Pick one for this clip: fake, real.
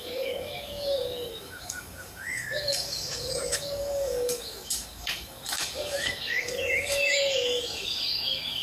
fake